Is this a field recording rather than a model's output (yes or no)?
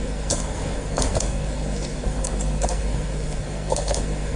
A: no